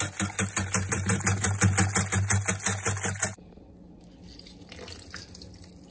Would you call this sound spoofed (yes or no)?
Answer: no